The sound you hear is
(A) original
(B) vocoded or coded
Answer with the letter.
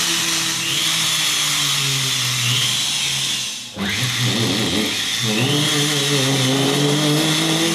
A